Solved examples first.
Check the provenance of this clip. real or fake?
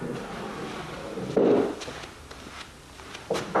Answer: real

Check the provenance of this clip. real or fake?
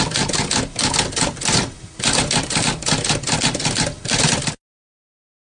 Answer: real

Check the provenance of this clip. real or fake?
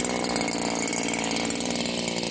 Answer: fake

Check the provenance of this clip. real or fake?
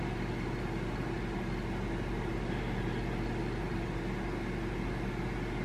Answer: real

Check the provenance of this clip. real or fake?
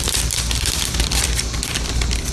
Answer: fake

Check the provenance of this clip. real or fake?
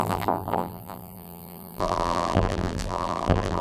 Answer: fake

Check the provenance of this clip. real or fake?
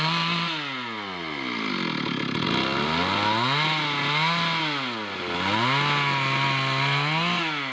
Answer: real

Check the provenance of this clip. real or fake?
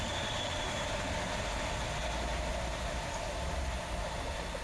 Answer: real